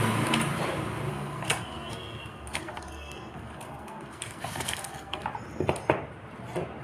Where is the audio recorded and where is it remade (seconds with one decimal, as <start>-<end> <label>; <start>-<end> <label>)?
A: 0.0-1.1 recorded; 1.1-5.2 remade; 5.2-6.8 recorded